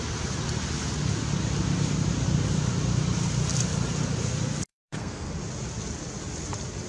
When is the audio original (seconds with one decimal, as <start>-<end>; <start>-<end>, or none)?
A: 0.0-4.7; 5.3-6.9